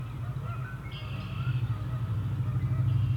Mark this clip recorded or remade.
recorded